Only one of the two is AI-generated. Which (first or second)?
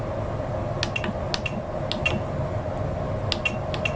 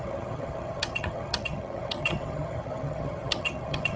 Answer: second